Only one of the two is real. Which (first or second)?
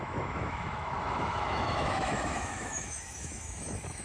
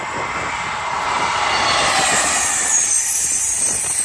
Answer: second